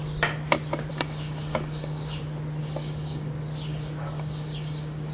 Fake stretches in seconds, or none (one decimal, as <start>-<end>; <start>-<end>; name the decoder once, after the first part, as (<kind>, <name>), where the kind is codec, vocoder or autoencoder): 0.9-2.2 (codec, DAC); 2.6-3.3; 3.7-5.1